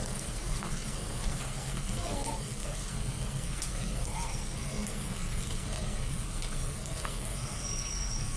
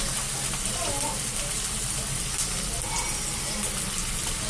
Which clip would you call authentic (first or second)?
second